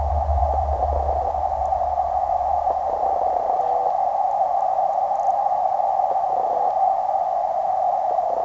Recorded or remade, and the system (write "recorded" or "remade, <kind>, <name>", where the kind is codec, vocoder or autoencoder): recorded